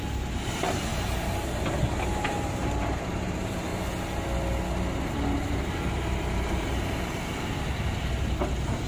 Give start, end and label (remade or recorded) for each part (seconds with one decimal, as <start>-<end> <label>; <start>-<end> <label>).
0.0-0.9 remade; 0.9-2.1 recorded; 2.1-3.7 remade; 3.7-5.5 recorded; 5.5-8.9 remade